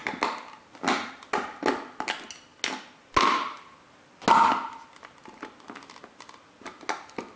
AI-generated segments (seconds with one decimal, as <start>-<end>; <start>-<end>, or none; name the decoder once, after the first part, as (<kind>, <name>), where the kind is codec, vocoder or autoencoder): none